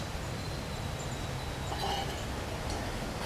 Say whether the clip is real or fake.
real